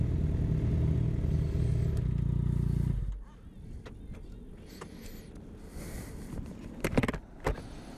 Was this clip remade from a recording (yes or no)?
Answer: no